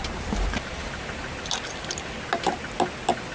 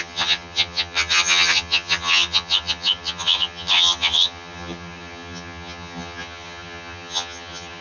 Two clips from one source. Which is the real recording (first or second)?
first